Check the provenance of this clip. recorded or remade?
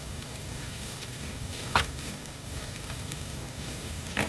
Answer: remade